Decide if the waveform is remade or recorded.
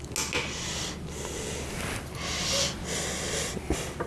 recorded